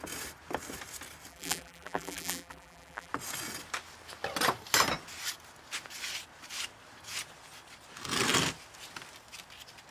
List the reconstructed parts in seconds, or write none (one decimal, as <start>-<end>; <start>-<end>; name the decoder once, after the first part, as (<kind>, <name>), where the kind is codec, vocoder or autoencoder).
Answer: 1.3-3.1 (vocoder, BigVGAN v2)